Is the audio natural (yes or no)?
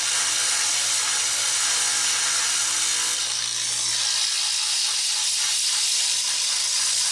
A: yes